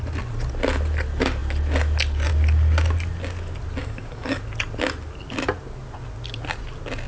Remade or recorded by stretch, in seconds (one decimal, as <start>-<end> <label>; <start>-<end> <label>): 0.0-3.8 recorded; 3.8-4.4 remade; 4.4-7.1 recorded